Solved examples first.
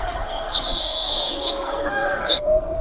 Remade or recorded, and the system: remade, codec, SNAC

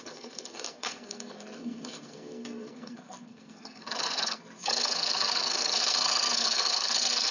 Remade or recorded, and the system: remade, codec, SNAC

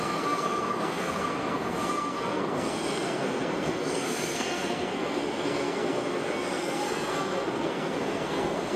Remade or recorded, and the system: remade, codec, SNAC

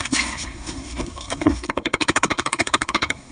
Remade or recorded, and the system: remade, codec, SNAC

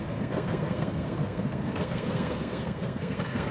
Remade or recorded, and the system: remade, codec, SNAC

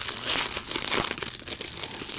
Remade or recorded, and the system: recorded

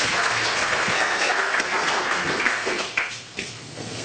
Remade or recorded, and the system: remade, codec, SNAC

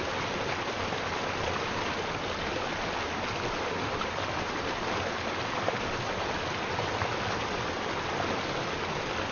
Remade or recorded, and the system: recorded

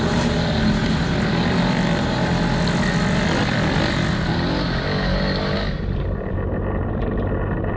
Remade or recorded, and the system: recorded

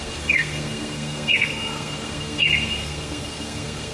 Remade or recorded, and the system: remade, codec, SNAC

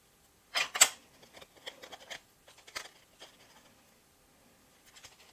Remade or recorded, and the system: recorded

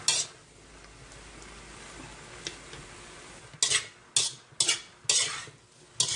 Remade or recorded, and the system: recorded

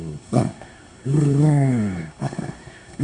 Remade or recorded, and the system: remade, codec, SNAC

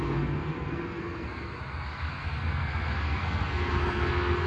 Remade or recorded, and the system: remade, codec, SNAC